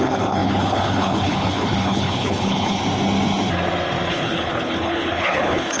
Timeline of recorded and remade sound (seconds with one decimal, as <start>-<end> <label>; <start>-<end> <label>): 0.0-2.8 remade; 2.8-4.1 recorded; 4.1-5.8 remade